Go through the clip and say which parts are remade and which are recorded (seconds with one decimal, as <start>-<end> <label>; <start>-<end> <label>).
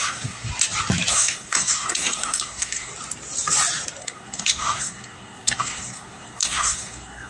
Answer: 0.0-0.5 remade; 0.5-1.1 recorded; 1.1-2.9 remade; 2.9-4.0 recorded; 4.0-7.3 remade